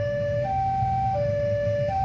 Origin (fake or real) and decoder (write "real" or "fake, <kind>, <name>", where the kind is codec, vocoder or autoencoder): fake, autoencoder, DAC-VAE